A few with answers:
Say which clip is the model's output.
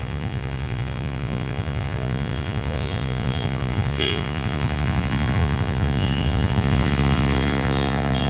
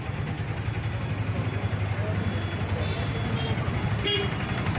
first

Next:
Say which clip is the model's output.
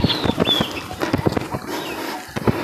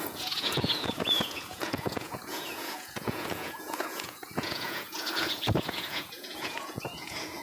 second